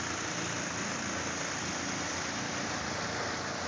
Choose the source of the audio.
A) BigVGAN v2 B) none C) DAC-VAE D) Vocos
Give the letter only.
B